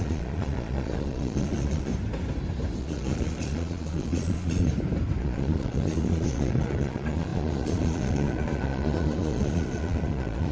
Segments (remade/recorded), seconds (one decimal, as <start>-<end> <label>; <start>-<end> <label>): 0.0-1.9 remade; 1.9-2.8 recorded; 2.8-4.7 remade; 4.7-5.2 recorded; 5.2-10.5 remade